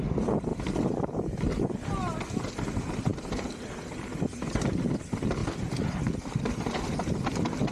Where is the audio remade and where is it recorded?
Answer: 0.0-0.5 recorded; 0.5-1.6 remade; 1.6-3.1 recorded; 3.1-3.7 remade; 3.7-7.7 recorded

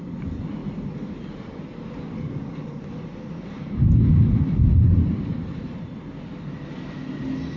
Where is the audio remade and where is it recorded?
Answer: 0.0-5.3 recorded; 5.3-6.0 remade; 6.0-7.6 recorded

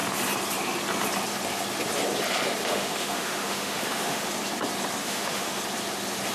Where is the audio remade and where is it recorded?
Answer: 0.0-2.6 recorded; 2.6-4.3 remade; 4.3-5.0 recorded; 5.0-5.6 remade; 5.6-6.3 recorded